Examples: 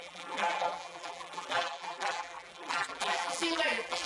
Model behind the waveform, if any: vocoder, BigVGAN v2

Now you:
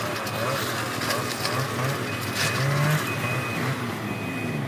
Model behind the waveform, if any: none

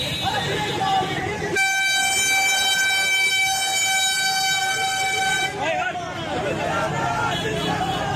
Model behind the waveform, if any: none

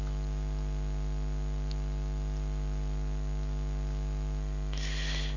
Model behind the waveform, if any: none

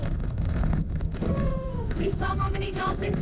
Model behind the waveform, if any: autoencoder, DAC-VAE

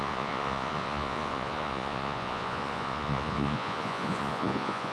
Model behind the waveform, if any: vocoder, Vocos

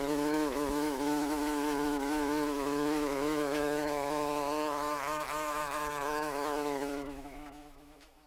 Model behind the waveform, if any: autoencoder, DAC-VAE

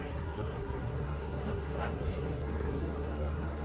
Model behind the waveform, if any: codec, SNAC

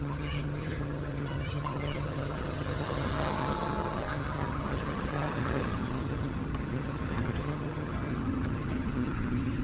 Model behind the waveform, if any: vocoder, HiFi-GAN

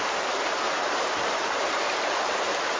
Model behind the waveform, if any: none